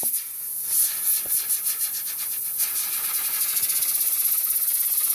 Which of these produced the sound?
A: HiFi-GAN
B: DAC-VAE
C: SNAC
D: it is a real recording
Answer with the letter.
D